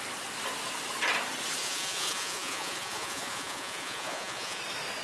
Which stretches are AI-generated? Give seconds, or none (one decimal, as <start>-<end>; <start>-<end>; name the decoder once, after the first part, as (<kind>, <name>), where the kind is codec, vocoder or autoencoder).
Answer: 1.6-4.6 (vocoder, Vocos)